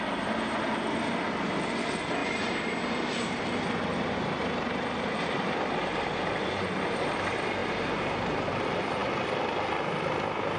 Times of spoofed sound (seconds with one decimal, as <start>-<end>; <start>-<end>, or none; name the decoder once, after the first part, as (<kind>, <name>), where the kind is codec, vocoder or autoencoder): 2.2-3.4 (vocoder, BigVGAN v2); 7.6-8.5